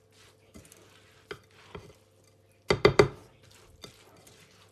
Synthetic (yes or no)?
no